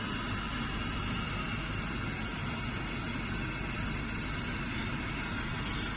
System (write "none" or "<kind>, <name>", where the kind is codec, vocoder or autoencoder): none